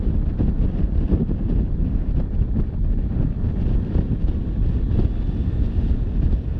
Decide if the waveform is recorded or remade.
recorded